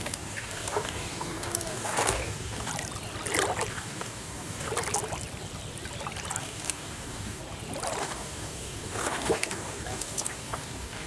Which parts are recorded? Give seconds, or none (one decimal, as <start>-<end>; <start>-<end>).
2.7-3.7; 4.7-6.4; 7.4-8.0